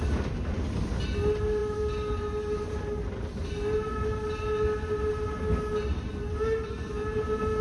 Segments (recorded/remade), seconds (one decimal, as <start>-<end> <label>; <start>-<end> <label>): 0.0-7.6 recorded